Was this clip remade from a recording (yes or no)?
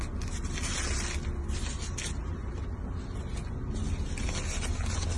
no